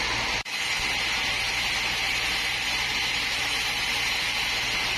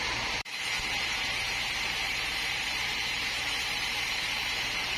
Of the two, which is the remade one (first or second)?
second